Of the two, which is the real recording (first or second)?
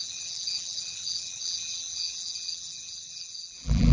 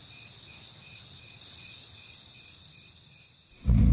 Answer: second